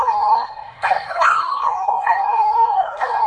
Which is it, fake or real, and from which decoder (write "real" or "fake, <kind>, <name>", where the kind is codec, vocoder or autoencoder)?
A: fake, codec, SNAC